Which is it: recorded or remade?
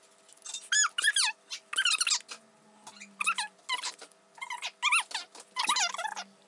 recorded